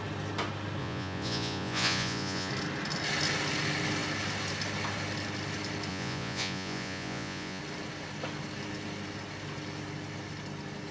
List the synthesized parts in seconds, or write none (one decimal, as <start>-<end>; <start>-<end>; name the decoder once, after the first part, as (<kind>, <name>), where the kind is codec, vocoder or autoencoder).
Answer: 0.8-2.5 (vocoder, Vocos); 5.9-7.6